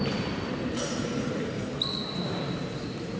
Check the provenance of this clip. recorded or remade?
remade